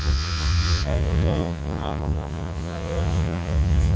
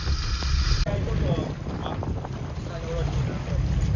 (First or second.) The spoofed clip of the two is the first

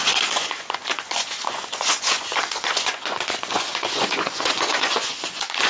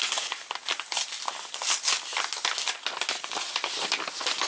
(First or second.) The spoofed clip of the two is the first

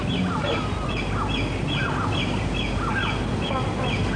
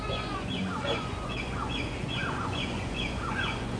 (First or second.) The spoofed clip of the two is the second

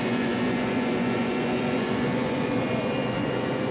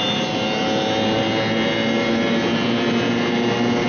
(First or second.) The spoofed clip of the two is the first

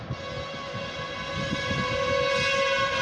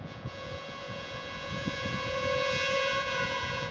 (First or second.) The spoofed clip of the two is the second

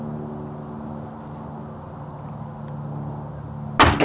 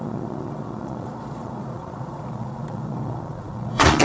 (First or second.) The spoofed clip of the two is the second